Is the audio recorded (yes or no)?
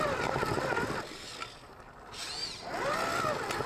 yes